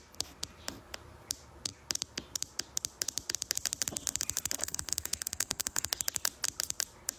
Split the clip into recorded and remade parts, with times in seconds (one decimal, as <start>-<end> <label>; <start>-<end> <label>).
0.0-4.6 recorded; 4.6-6.0 remade; 6.0-7.2 recorded